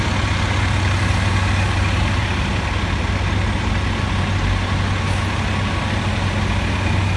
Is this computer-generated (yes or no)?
no